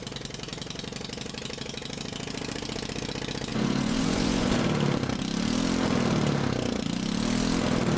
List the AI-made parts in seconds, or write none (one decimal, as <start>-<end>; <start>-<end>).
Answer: 3.5-4.5